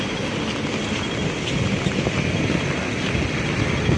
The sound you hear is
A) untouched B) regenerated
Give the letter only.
A